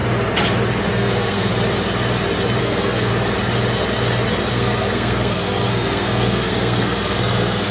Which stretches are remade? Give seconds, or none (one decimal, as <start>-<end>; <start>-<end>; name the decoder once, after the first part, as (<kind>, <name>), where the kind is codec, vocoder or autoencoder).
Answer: 0.9-1.5 (codec, SNAC); 2.6-3.1; 4.5-7.7